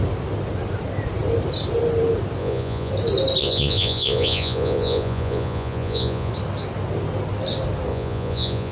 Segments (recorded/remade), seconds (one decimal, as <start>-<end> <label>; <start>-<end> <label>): 0.0-2.4 recorded; 2.4-2.9 remade; 2.9-3.4 recorded; 3.4-6.3 remade; 6.3-7.9 recorded; 7.9-8.7 remade